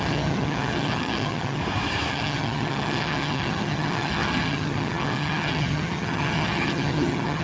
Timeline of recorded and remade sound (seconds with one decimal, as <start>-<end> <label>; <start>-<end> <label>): 0.0-1.6 remade; 1.6-2.1 recorded; 2.1-7.4 remade